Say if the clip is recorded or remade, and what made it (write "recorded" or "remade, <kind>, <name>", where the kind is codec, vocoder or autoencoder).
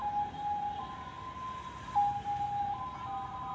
recorded